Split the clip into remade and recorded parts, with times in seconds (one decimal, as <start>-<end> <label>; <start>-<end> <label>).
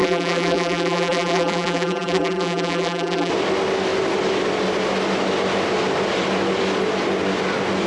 0.0-3.3 remade; 3.3-7.9 recorded